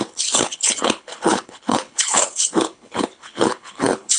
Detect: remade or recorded remade